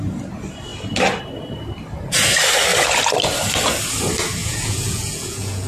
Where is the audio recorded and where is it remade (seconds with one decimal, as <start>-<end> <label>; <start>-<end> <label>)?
0.0-4.4 recorded; 4.4-5.7 remade